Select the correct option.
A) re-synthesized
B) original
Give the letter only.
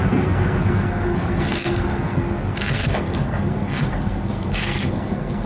A